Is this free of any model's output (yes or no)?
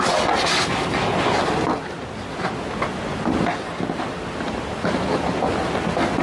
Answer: yes